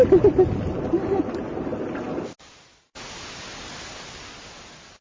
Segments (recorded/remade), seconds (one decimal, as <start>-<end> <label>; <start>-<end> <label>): 0.0-5.0 recorded